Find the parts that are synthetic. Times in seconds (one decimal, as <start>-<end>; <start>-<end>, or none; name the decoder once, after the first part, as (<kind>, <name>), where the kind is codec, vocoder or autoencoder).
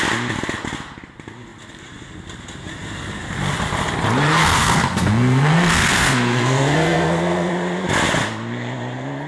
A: 4.4-7.5 (codec, SNAC)